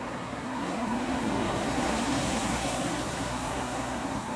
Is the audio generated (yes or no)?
yes